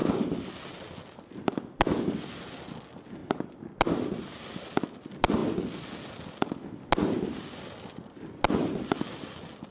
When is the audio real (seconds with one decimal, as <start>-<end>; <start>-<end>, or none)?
0.0-9.7